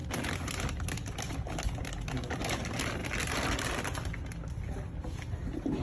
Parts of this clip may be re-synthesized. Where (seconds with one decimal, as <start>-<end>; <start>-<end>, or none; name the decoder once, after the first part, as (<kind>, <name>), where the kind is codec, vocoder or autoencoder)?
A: none